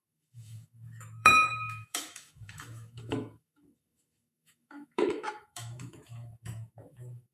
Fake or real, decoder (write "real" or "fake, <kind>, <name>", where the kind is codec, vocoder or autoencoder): fake, autoencoder, DAC-VAE